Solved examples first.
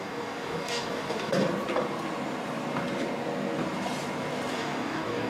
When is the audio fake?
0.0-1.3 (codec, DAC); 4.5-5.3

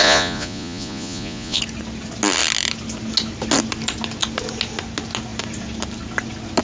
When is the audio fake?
0.0-1.6 (vocoder, Vocos)

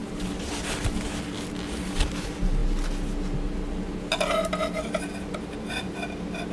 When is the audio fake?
none

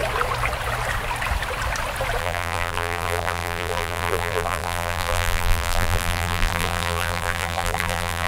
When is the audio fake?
2.2-8.3 (vocoder, BigVGAN v2)